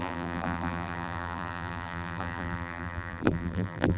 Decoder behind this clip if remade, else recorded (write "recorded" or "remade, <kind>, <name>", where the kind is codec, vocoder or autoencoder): remade, vocoder, BigVGAN v2